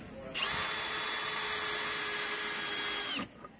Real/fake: real